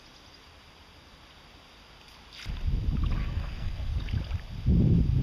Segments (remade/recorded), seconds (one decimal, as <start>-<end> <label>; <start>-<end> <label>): 0.0-3.2 recorded; 3.2-4.0 remade; 4.0-5.2 recorded